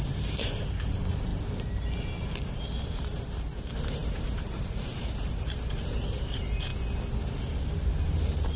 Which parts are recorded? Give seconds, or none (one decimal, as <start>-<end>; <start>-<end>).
1.3-2.5; 6.7-7.6